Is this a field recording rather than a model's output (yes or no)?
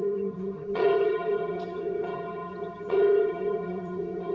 no